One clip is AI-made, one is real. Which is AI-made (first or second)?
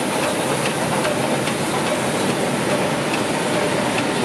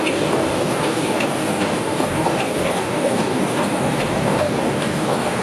second